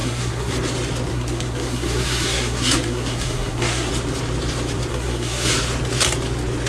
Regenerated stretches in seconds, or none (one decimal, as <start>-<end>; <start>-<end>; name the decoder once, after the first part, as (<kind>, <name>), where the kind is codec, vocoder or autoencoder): 0.0-0.5 (codec, SNAC); 1.1-3.9; 4.9-5.5